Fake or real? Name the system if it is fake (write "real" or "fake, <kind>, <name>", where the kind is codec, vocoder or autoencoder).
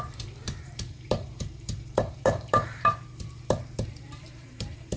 fake, vocoder, BigVGAN v2